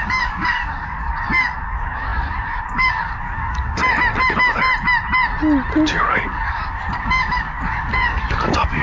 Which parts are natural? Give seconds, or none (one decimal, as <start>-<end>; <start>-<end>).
3.8-6.0